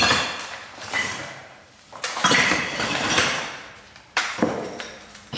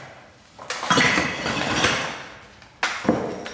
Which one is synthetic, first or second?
first